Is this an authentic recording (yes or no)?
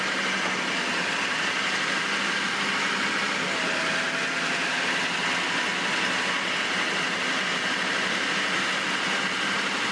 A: yes